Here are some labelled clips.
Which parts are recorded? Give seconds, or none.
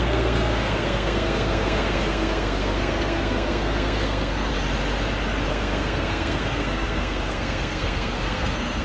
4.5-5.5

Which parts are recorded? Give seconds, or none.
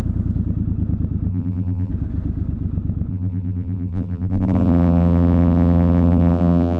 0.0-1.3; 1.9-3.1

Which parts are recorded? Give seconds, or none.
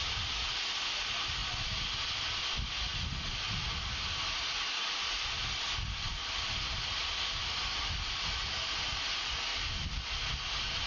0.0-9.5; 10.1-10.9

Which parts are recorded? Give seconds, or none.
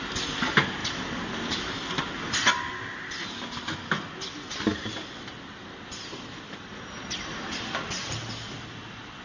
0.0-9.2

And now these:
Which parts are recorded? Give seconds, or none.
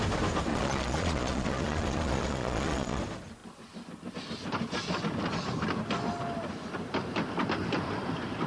0.0-0.5; 3.0-8.5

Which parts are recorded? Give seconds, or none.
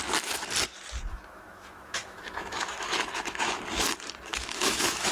0.0-1.1; 3.6-4.3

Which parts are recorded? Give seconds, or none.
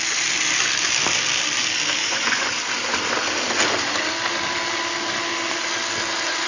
0.0-2.0; 2.5-6.5